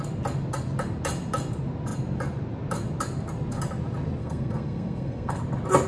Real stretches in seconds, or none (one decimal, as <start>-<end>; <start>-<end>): 0.0-4.2; 5.4-5.9